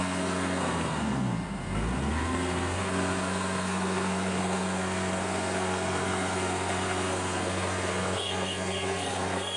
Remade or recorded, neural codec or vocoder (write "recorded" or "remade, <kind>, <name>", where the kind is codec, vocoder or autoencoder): remade, codec, SNAC